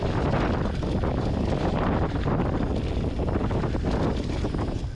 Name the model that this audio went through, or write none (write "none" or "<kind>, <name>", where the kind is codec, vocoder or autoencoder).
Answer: none